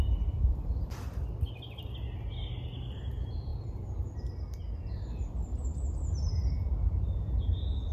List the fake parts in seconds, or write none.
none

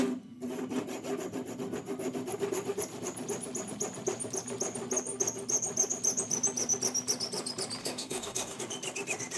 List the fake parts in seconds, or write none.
7.8-8.6 (codec, DAC)

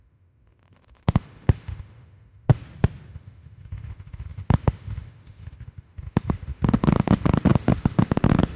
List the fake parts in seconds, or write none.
0.0-2.6 (autoencoder, DAC-VAE); 3.1-8.6